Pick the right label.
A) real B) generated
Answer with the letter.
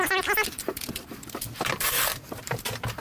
A